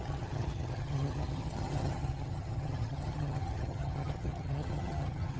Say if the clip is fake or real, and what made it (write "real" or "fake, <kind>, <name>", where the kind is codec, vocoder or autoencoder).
fake, vocoder, HiFi-GAN